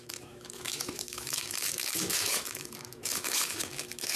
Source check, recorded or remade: remade